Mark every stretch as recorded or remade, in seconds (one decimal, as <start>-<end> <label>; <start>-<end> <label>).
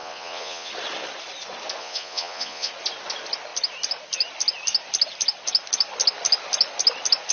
0.0-0.7 remade; 0.7-1.8 recorded; 1.8-2.7 remade; 2.7-7.3 recorded